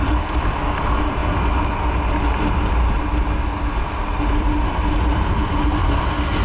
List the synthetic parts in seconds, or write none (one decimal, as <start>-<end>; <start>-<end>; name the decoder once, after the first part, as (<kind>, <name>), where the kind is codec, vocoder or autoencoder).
0.0-1.2 (vocoder, BigVGAN v2); 4.4-6.4